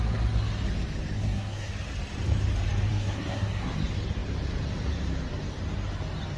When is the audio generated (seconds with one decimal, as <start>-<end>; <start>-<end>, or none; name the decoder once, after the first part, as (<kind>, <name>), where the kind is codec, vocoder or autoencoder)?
1.2-1.7 (codec, SNAC); 2.9-3.7

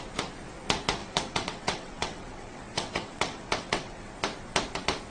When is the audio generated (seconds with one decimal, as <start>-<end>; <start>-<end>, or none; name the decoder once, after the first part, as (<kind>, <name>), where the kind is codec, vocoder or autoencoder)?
1.0-4.1 (vocoder, WaveNeXt)

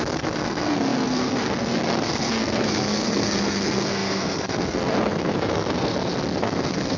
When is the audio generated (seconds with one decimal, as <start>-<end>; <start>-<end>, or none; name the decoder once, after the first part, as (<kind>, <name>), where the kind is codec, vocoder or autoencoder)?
0.0-5.9 (codec, SNAC); 6.4-7.0

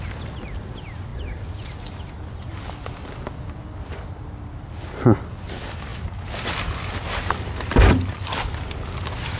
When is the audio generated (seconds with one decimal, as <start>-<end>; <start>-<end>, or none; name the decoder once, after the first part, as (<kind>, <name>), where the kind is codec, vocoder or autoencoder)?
none